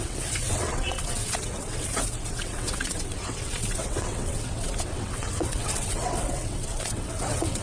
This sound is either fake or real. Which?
fake